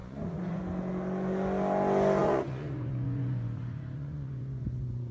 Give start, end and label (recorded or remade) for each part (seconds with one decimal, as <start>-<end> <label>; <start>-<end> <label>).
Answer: 0.0-0.6 remade; 0.6-2.2 recorded; 2.2-5.1 remade

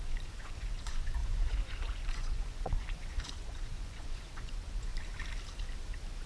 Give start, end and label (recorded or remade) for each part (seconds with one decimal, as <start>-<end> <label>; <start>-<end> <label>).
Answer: 0.0-4.9 remade; 4.9-6.3 recorded